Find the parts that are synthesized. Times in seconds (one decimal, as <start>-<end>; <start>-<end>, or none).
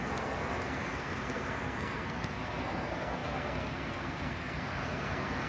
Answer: 0.0-5.5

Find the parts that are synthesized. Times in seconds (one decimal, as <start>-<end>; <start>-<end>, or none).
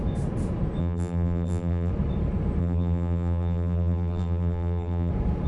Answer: 0.8-1.9; 2.6-5.1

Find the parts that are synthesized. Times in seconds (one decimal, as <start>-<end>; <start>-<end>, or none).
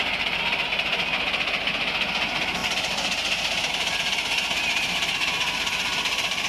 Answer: none